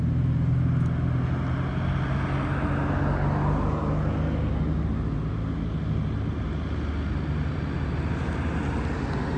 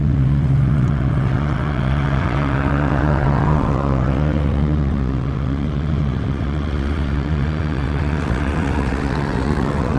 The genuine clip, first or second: first